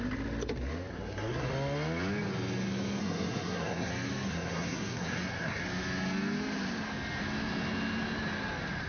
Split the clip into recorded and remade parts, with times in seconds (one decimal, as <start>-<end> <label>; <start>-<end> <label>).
0.0-0.9 recorded; 0.9-1.5 remade; 1.5-3.0 recorded; 3.0-3.9 remade; 3.9-4.3 recorded; 4.3-5.6 remade; 5.6-8.9 recorded